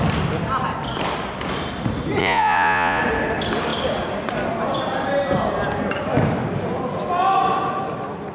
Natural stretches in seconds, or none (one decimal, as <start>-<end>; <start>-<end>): 0.0-2.2; 3.0-8.3